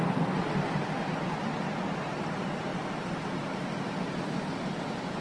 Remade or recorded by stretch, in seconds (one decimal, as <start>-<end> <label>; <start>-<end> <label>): 0.0-5.2 recorded